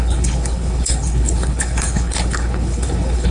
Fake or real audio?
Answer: fake